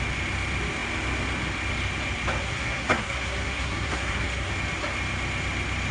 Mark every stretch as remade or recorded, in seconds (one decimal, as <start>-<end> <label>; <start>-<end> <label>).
0.0-2.4 recorded; 2.4-4.5 remade; 4.5-5.9 recorded